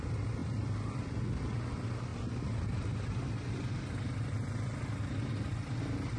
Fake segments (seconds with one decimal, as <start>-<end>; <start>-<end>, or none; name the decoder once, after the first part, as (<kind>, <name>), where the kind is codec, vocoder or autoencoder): none